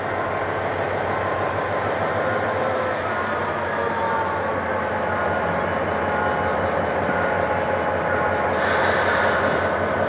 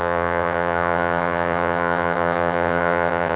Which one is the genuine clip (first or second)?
first